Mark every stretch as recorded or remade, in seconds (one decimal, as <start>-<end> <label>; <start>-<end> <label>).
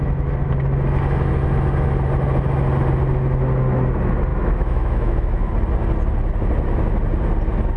0.0-4.3 recorded; 4.3-5.5 remade; 5.5-7.8 recorded